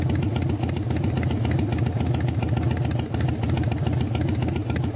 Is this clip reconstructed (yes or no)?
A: no